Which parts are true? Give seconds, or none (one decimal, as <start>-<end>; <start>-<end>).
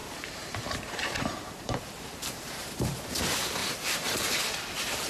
3.1-3.6; 4.3-5.1